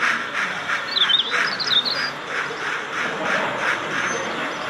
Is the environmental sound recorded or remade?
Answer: recorded